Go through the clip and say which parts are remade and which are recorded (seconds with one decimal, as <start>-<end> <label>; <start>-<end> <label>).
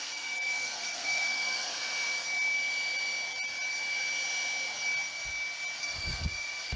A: 0.0-1.7 remade; 1.7-5.8 recorded; 5.8-6.8 remade